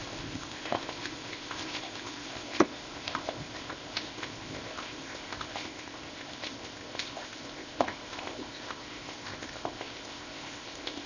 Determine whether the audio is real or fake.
fake